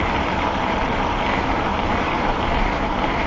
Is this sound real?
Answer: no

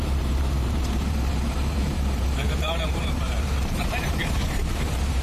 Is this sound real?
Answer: no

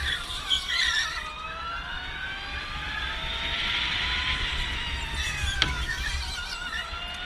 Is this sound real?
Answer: yes